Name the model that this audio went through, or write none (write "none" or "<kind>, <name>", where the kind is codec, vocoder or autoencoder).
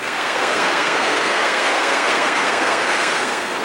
codec, SNAC